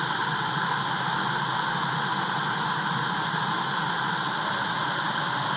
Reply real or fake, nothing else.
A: real